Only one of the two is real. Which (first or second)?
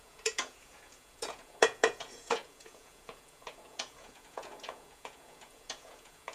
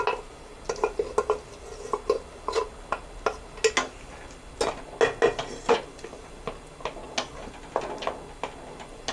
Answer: second